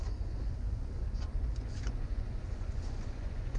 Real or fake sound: fake